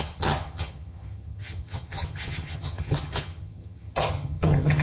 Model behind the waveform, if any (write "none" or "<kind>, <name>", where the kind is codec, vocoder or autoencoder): vocoder, HiFi-GAN